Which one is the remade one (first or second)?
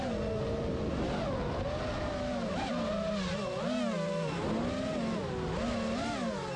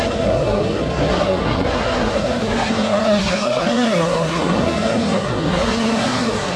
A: second